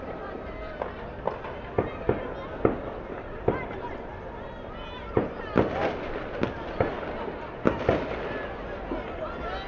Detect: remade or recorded recorded